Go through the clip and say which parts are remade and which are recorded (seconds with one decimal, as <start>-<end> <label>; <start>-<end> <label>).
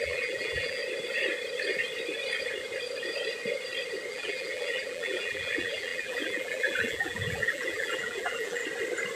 0.0-0.8 remade; 0.8-4.1 recorded; 4.1-8.6 remade; 8.6-9.2 recorded